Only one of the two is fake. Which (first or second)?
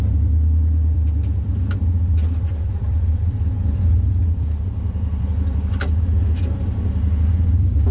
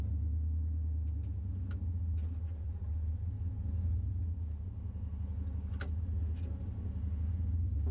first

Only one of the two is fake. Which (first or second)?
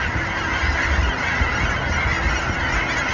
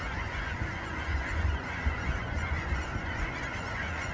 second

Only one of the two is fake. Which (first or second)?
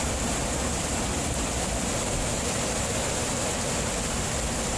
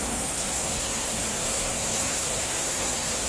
second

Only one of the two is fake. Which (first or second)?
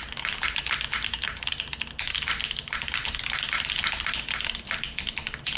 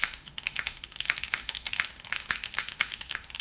second